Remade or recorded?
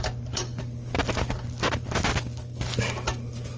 recorded